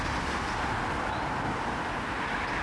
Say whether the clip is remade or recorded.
recorded